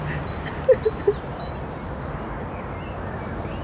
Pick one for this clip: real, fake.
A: real